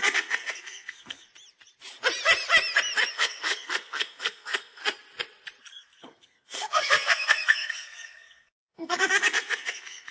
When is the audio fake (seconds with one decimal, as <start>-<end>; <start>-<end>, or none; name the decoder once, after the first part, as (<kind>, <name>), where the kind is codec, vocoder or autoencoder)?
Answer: 0.0-1.3 (codec, SNAC); 3.1-4.8; 5.6-10.1